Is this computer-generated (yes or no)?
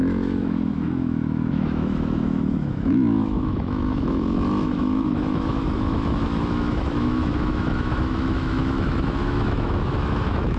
yes